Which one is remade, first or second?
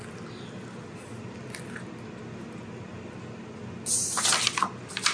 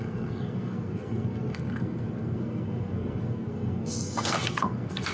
second